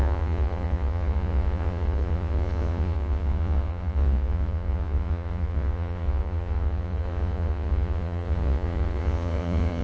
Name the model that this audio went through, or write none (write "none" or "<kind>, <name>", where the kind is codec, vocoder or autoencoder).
vocoder, Vocos